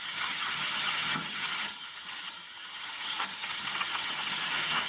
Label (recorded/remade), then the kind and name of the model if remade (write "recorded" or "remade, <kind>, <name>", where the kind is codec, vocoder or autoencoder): remade, vocoder, HiFi-GAN